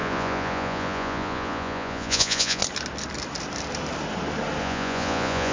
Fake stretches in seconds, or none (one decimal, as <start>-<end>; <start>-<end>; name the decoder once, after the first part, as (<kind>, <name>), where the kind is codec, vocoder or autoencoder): 0.0-2.6 (vocoder, Vocos); 4.6-5.5